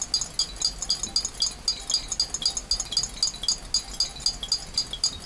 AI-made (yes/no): no